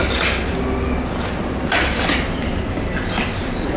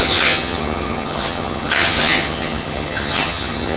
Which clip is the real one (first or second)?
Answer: first